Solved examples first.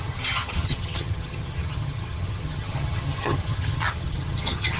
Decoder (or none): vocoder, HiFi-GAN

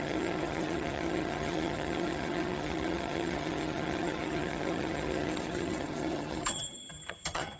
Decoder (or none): vocoder, HiFi-GAN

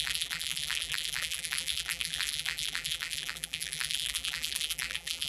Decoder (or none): vocoder, BigVGAN v2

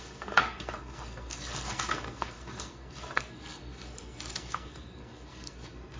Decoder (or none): codec, SNAC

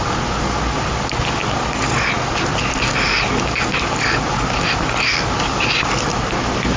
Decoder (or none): none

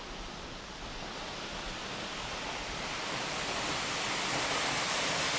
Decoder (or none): none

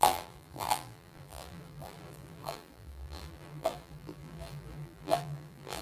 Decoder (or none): vocoder, BigVGAN v2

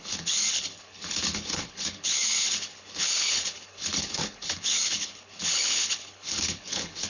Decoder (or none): codec, HILCodec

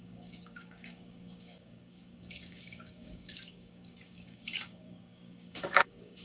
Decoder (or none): codec, DAC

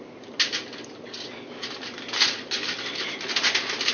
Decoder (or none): none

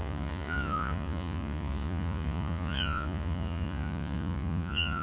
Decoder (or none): vocoder, Vocos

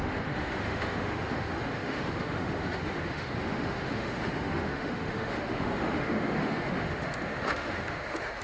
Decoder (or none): autoencoder, DAC-VAE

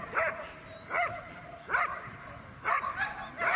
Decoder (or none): none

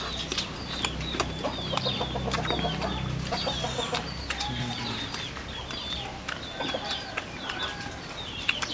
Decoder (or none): none